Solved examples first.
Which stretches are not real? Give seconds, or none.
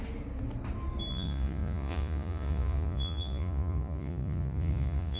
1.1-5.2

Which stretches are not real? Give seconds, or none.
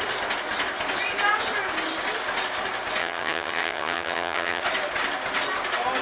3.0-4.6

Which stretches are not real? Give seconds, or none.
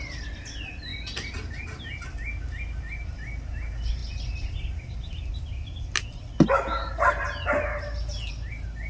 none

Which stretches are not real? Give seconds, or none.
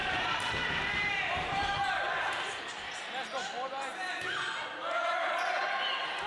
0.0-2.7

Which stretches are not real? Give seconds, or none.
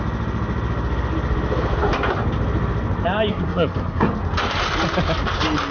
3.3-4.1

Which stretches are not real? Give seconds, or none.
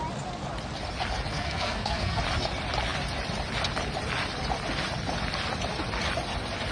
1.3-2.2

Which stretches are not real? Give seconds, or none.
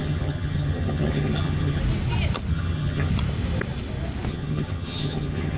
0.0-1.8; 2.5-3.1; 4.3-5.6